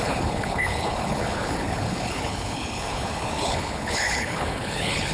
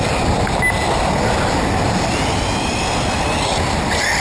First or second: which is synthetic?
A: first